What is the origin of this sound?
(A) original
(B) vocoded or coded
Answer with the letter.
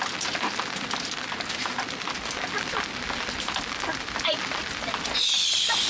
A